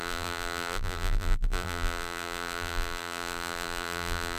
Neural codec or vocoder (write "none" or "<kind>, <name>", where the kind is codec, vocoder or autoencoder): vocoder, BigVGAN v2